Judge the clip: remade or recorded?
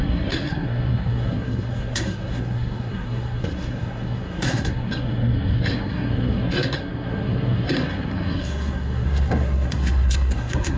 remade